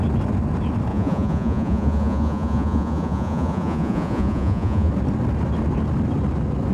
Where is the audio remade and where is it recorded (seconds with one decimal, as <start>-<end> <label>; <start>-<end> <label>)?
0.0-0.9 recorded; 0.9-4.9 remade; 4.9-6.7 recorded

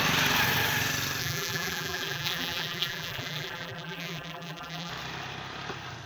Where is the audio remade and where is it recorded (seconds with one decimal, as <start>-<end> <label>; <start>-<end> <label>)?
0.0-1.2 recorded; 1.2-4.9 remade; 4.9-6.1 recorded

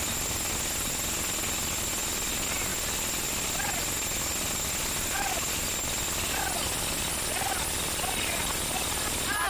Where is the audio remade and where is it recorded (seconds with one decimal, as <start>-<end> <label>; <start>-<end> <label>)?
0.0-9.5 recorded

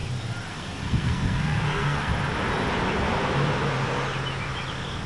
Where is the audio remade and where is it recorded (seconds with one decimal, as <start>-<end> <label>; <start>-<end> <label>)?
0.0-0.5 recorded; 0.5-2.1 remade; 2.1-5.1 recorded